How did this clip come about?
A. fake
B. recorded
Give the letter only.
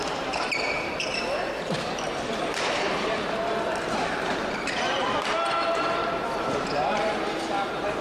A